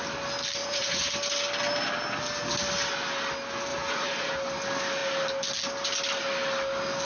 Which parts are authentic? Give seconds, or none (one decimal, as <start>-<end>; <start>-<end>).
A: 0.0-0.6; 1.1-3.7; 4.3-7.1